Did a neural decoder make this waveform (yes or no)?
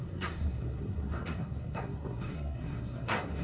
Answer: yes